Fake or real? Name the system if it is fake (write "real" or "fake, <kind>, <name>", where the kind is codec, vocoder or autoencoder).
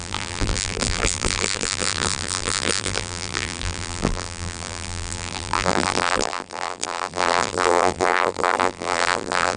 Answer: fake, vocoder, BigVGAN v2